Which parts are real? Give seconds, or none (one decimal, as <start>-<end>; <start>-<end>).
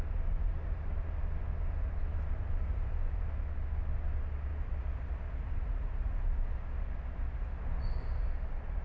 0.0-2.1; 3.2-4.5; 6.5-8.8